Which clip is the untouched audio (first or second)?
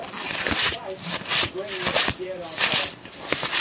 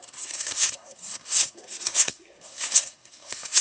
first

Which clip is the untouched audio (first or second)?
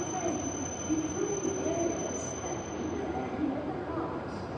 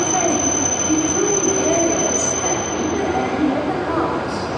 second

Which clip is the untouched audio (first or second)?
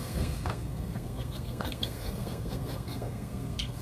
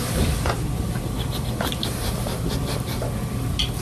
second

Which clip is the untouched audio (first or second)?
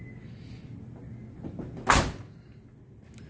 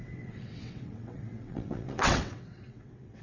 first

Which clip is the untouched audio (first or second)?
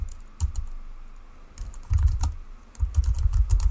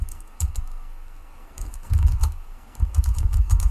first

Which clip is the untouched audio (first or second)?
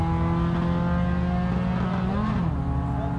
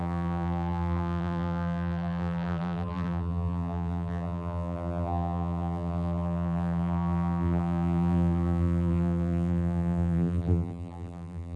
first